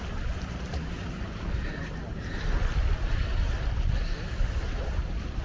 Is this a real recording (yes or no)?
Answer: yes